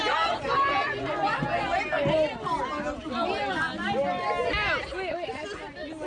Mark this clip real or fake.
real